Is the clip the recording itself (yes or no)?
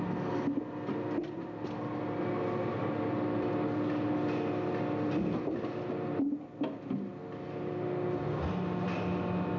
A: yes